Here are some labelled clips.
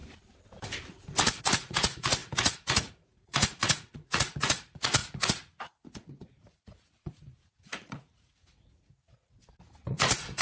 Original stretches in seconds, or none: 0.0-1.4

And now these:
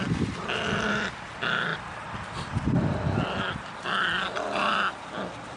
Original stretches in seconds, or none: 0.0-5.6

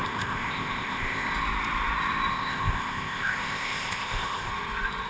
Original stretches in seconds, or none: 1.3-2.3; 4.5-5.1